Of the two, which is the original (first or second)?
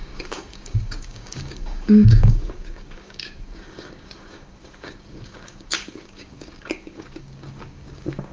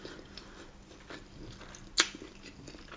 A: second